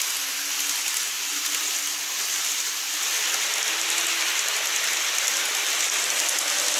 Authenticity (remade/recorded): recorded